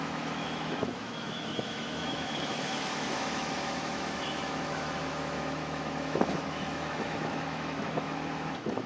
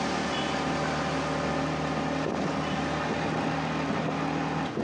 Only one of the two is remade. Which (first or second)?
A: first